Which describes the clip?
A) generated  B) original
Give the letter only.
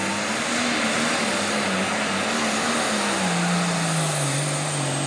B